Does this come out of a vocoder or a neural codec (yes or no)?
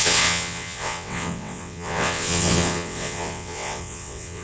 yes